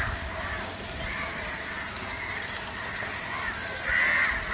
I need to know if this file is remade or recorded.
recorded